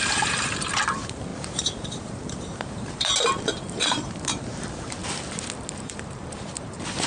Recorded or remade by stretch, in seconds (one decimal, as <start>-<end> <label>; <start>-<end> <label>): 0.0-5.0 remade; 5.0-5.7 recorded; 5.7-7.1 remade